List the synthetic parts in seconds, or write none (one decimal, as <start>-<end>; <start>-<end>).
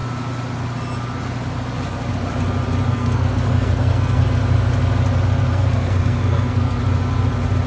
2.9-4.2; 5.5-6.8